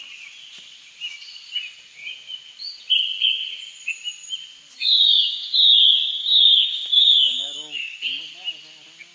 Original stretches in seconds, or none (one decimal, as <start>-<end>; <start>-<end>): 0.0-6.2; 8.2-9.1